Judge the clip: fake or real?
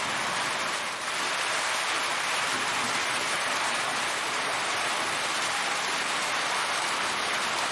fake